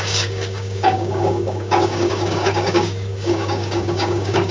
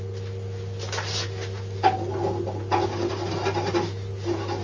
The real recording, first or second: second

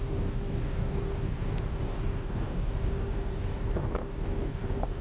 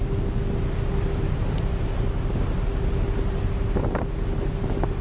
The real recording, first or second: second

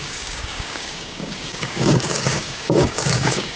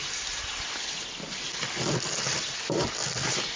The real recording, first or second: second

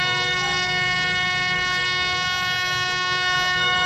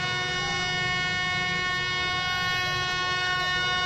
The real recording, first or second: second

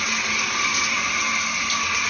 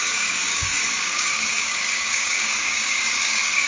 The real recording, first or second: first